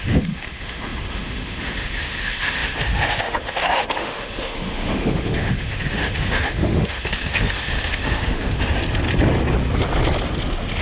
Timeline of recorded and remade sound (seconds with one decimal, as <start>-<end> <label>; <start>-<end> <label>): 0.0-8.8 remade; 8.8-10.8 recorded